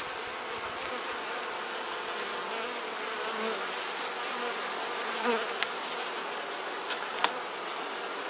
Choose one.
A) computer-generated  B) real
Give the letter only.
B